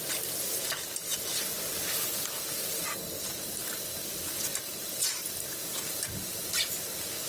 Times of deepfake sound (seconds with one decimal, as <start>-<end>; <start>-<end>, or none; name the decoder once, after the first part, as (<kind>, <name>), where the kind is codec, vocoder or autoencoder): none